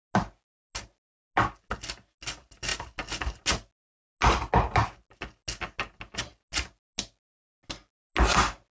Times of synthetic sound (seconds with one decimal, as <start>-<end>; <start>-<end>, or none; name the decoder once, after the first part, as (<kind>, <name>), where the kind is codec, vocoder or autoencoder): none